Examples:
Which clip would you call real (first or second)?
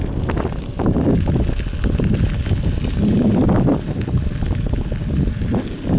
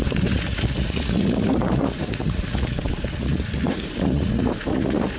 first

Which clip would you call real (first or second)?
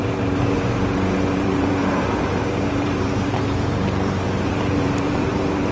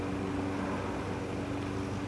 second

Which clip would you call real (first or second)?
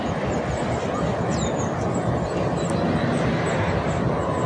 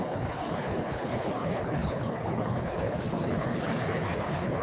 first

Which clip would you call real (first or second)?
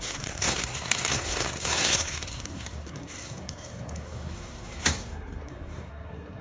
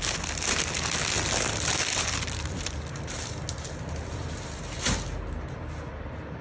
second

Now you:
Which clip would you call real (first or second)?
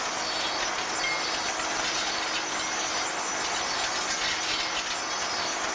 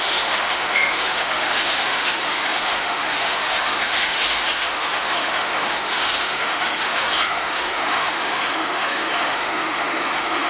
first